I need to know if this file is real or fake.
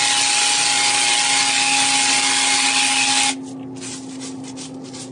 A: real